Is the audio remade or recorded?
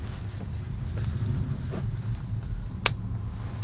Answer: recorded